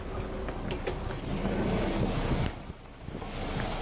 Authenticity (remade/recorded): recorded